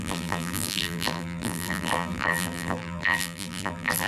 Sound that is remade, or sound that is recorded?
remade